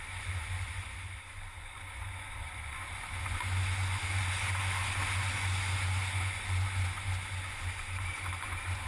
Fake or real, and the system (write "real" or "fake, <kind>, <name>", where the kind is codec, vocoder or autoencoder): fake, vocoder, Vocos